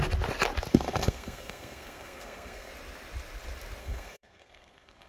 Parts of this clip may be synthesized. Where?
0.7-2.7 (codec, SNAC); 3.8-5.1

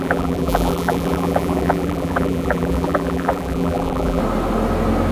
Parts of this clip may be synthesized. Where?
0.0-4.2 (vocoder, BigVGAN v2)